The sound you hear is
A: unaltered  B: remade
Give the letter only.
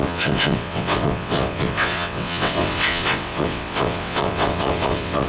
B